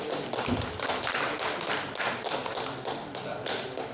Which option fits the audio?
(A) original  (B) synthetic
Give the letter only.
A